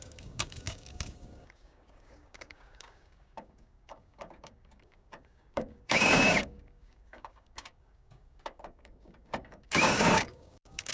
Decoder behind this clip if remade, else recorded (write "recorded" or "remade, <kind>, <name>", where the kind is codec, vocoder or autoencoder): remade, codec, DAC